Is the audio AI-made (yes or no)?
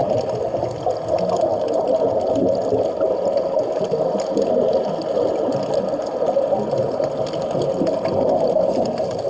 no